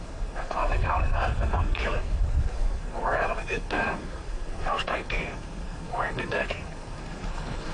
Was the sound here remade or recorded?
remade